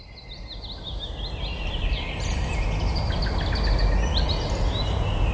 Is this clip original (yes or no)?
yes